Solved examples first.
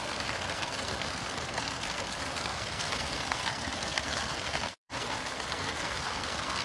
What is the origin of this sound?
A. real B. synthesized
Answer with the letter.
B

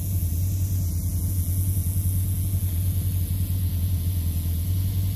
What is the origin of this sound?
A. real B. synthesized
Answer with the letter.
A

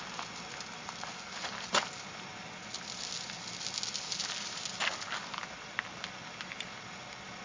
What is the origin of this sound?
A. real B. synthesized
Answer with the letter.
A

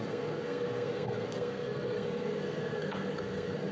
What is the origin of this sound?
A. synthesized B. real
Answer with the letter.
A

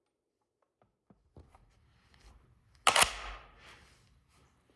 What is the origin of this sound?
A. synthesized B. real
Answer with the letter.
B